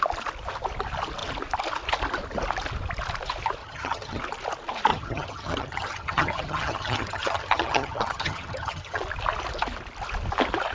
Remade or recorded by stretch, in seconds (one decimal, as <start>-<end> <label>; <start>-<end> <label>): 0.0-3.6 recorded; 3.6-4.2 remade; 4.2-4.9 recorded; 4.9-9.0 remade; 9.0-10.7 recorded